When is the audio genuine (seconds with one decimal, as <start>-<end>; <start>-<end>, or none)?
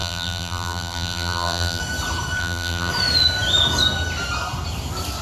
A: 1.8-2.4; 2.9-5.2